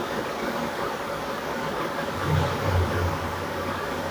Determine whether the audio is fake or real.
fake